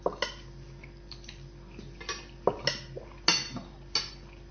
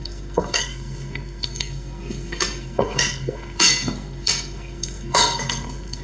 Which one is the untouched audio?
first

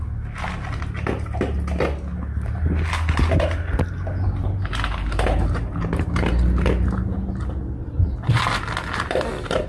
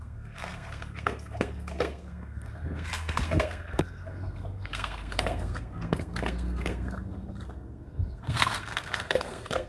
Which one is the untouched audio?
first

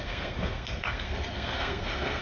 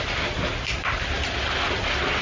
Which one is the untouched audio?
second